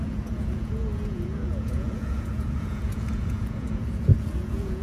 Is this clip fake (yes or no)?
yes